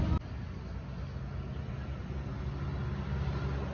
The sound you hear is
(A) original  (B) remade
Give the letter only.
A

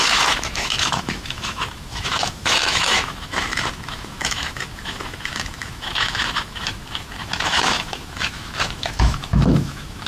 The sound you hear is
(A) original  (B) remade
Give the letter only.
B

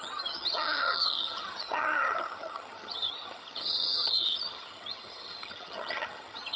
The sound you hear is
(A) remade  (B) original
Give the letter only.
A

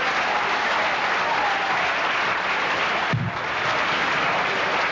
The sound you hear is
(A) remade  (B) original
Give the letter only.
B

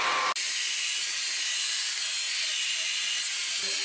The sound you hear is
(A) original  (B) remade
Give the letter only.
A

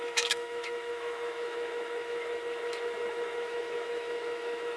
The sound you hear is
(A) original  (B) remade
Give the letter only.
B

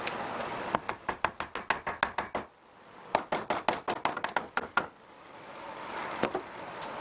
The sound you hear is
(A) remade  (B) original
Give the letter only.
B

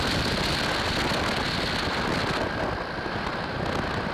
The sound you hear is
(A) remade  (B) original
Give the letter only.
B